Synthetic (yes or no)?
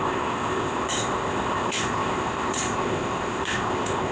yes